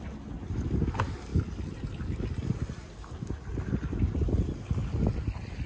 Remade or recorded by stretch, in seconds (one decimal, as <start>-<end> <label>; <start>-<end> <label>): 0.0-5.7 recorded